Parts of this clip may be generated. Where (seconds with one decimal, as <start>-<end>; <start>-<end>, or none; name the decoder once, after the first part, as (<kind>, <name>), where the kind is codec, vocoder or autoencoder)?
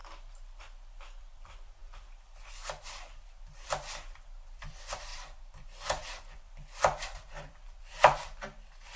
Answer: 0.6-9.0 (vocoder, BigVGAN v2)